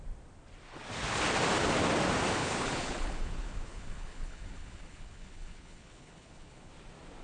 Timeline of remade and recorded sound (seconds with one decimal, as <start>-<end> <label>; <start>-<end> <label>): 0.0-2.4 recorded; 2.4-6.7 remade; 6.7-7.2 recorded